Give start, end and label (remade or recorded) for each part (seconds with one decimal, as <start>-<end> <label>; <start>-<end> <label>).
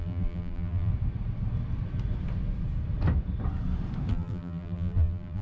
0.0-0.9 remade; 0.9-4.1 recorded; 4.1-5.4 remade